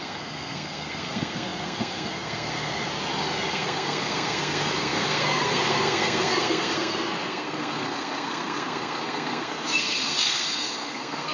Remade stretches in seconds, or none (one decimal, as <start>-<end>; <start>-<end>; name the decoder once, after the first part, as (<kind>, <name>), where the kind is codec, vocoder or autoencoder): 0.0-2.9 (codec, SNAC); 3.5-11.3